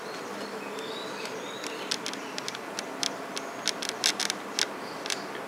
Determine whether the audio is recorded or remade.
recorded